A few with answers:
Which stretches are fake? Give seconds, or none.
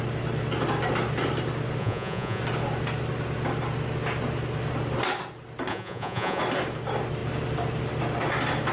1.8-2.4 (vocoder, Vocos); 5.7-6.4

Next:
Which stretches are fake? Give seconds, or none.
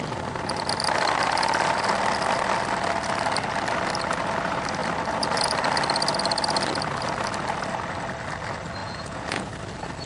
8.8-9.5 (vocoder, Vocos)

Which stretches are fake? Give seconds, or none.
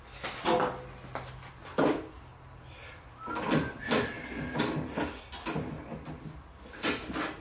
none